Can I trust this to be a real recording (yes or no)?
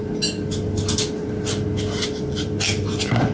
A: yes